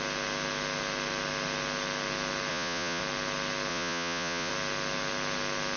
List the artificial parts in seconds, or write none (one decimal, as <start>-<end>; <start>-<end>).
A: 2.5-3.0; 3.7-4.5